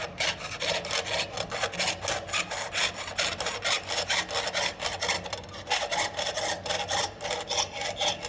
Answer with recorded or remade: recorded